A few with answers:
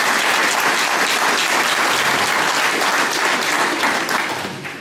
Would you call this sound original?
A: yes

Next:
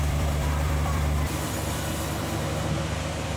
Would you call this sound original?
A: no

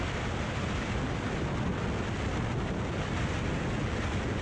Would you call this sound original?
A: yes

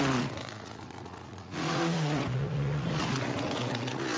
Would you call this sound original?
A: no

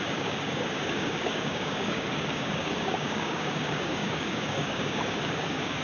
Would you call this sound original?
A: no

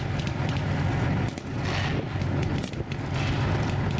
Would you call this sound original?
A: yes